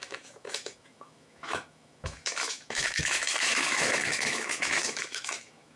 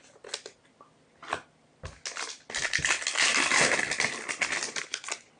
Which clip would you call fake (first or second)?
first